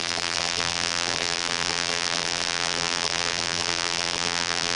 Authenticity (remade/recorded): remade